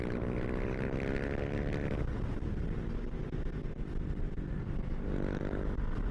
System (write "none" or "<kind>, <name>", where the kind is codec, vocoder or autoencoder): none